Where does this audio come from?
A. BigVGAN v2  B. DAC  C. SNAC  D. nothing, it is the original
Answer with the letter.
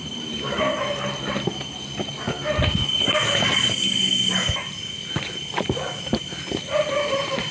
D